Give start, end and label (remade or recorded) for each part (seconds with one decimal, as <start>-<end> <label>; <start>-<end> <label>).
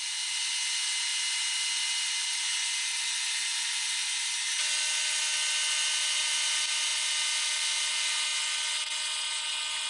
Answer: 0.0-9.9 recorded